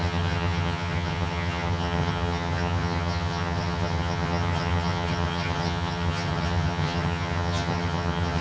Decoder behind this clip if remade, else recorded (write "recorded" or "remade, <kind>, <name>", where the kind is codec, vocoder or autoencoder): remade, vocoder, HiFi-GAN